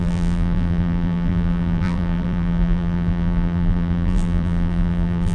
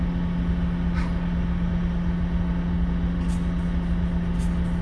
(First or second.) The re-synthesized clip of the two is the first